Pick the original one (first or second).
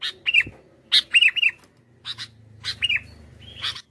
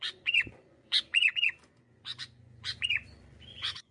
first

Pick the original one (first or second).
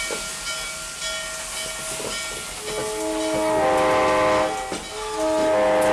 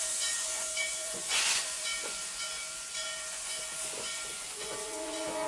first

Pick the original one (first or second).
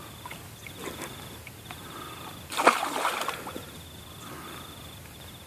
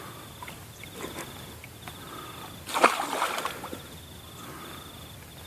second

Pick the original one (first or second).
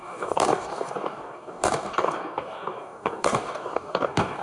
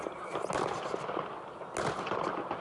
second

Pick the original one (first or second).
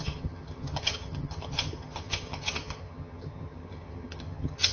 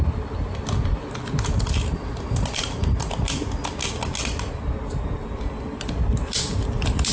second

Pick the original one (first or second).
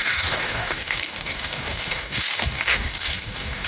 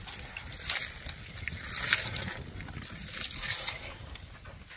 second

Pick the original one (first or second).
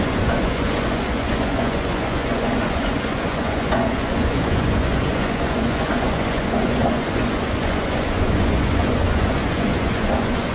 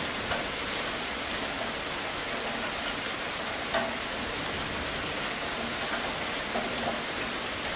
second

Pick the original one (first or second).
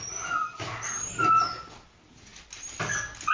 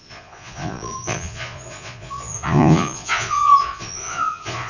first